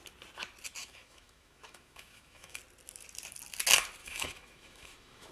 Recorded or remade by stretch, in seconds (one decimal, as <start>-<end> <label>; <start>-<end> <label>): 0.0-0.8 recorded; 0.8-2.6 remade; 2.6-4.0 recorded; 4.0-5.3 remade